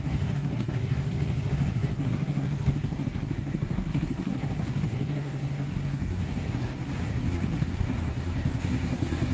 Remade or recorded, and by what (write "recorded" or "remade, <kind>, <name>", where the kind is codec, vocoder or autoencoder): remade, codec, SNAC